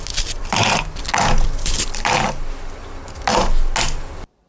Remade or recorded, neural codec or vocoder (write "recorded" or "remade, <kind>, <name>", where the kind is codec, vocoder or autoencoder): recorded